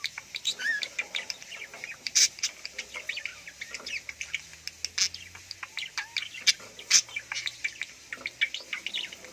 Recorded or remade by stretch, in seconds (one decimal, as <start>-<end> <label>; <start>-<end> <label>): 0.0-3.3 remade; 3.3-3.9 recorded; 3.9-4.5 remade; 4.5-6.5 recorded; 6.5-8.1 remade; 8.1-8.9 recorded; 8.9-9.3 remade